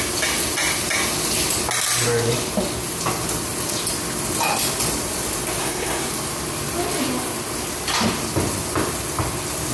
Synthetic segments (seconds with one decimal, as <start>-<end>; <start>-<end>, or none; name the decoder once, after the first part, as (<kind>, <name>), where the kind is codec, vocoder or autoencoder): 5.6-6.1 (codec, SNAC)